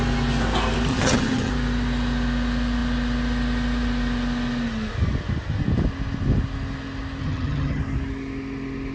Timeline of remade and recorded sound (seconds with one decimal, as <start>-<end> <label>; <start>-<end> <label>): 0.0-0.9 recorded; 0.9-1.5 remade; 1.5-7.2 recorded; 7.2-7.8 remade; 7.8-8.9 recorded